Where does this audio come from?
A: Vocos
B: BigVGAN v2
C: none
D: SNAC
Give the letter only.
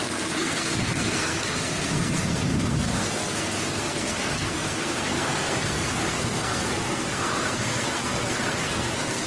D